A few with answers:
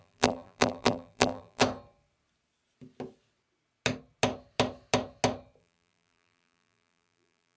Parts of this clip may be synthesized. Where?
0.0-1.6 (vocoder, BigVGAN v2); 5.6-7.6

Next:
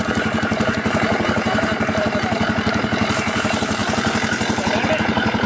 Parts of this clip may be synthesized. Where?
0.0-3.8 (vocoder, BigVGAN v2); 4.9-5.5

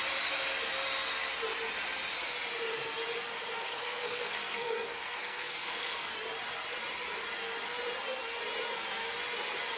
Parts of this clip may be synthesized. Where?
3.6-6.1 (codec, SNAC)

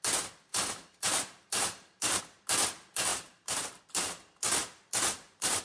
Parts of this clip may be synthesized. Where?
0.5-2.2 (vocoder, BigVGAN v2); 3.1-3.8; 4.6-5.6

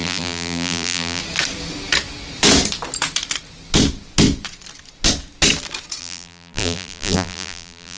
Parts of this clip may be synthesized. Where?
0.0-1.2 (vocoder, BigVGAN v2); 6.0-8.0